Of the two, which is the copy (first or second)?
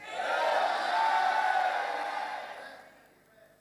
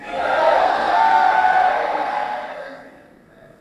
second